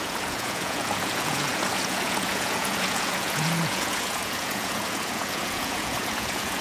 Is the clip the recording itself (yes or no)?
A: no